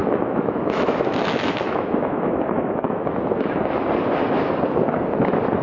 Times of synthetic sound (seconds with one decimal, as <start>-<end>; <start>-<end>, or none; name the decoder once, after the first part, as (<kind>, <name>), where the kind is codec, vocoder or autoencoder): 0.0-3.4 (autoencoder, DAC-VAE)